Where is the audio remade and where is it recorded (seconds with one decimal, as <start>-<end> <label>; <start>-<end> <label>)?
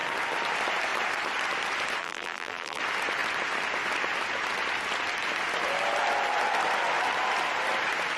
0.0-2.0 recorded; 2.0-2.8 remade; 2.8-8.2 recorded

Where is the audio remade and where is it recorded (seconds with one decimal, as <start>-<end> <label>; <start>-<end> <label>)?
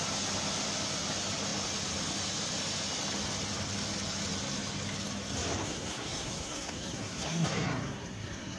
0.0-5.6 recorded; 5.6-8.6 remade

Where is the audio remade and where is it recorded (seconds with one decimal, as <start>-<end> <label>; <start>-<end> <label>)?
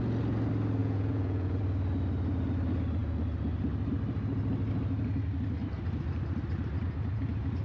0.0-0.8 recorded; 0.8-1.6 remade; 1.6-7.6 recorded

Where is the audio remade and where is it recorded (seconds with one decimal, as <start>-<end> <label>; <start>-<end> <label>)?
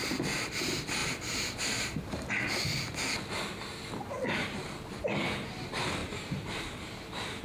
0.0-1.0 recorded; 1.0-2.3 remade; 2.3-6.0 recorded; 6.0-7.4 remade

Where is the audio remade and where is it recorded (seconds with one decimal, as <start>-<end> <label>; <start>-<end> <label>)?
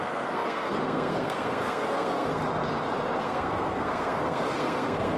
0.0-2.4 remade; 2.4-3.2 recorded; 3.2-5.2 remade